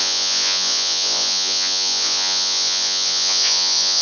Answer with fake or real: fake